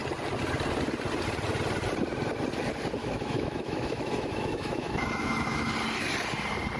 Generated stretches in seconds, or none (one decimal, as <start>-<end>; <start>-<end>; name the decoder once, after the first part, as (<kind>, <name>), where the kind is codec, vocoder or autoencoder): 3.0-5.7 (autoencoder, DAC-VAE)